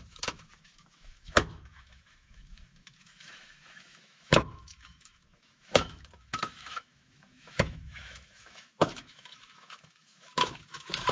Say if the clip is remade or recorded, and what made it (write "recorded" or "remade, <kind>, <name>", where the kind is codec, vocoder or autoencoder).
remade, autoencoder, DAC-VAE